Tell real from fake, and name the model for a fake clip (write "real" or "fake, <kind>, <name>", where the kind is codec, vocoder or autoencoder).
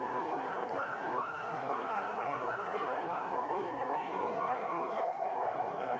fake, codec, SNAC